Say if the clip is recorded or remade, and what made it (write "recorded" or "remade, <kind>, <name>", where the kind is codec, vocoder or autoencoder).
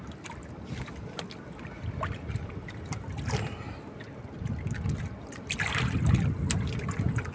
recorded